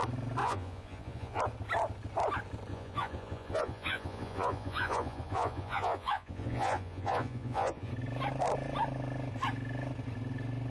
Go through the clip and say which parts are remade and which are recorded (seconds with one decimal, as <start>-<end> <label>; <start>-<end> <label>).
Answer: 0.0-0.4 recorded; 0.4-1.4 remade; 1.4-2.7 recorded; 2.7-7.9 remade; 7.9-10.7 recorded